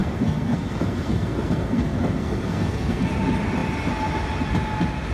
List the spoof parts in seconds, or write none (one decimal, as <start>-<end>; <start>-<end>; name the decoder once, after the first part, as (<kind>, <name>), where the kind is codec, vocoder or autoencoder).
0.0-3.1 (codec, SNAC)